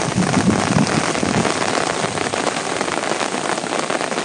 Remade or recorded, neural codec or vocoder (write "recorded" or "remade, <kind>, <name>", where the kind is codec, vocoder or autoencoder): recorded